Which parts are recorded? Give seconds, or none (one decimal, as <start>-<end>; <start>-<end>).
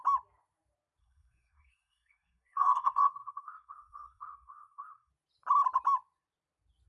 0.0-1.0; 5.1-6.9